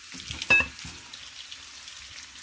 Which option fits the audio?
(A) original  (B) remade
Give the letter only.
A